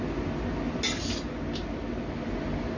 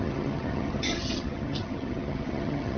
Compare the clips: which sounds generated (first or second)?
second